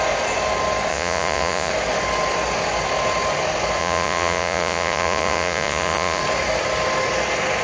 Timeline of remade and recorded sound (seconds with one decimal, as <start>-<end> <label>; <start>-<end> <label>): 0.0-0.9 recorded; 0.9-1.7 remade; 1.7-3.8 recorded; 3.8-6.2 remade; 6.2-7.6 recorded